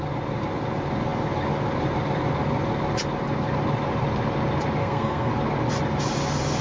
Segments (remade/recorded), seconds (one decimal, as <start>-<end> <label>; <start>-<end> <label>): 0.0-4.8 recorded; 4.8-5.3 remade; 5.3-6.6 recorded